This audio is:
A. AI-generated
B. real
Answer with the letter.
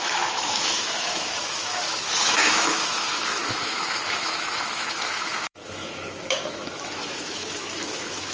A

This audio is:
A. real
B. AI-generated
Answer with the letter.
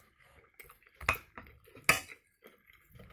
A